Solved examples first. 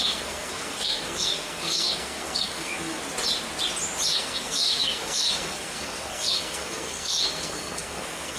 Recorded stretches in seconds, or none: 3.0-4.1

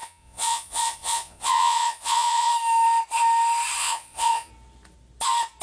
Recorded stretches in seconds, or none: 2.5-3.8; 4.5-5.6

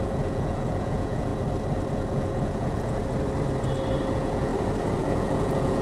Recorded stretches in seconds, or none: 1.3-1.9; 3.0-4.1; 4.5-5.0

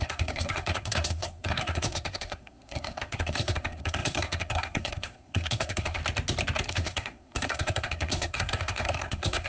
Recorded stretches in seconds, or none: 6.0-6.7